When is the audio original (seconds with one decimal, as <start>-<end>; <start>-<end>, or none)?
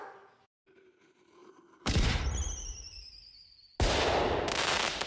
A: 0.0-1.4; 3.7-5.1